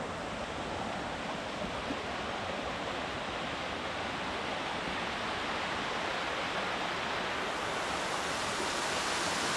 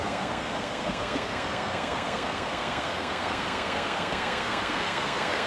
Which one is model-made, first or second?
second